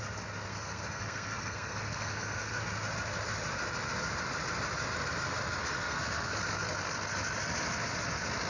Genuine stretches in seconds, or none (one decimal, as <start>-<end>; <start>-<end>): 0.0-0.5; 2.6-5.6; 6.3-8.5